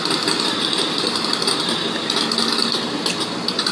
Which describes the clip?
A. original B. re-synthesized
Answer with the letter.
A